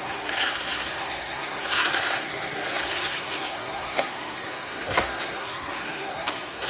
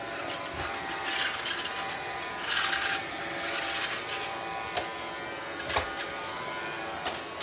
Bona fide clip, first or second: second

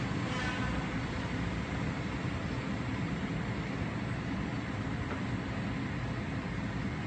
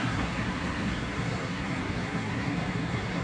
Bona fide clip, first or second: first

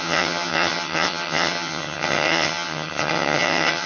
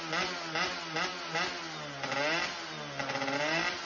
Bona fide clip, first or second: second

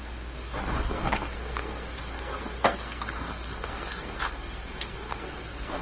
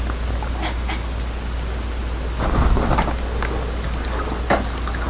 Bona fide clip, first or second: second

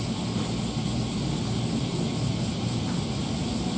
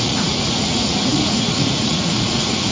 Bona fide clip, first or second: first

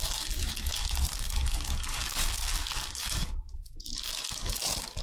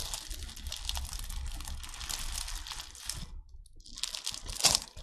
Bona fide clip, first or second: second